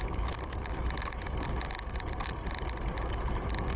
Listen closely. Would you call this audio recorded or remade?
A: recorded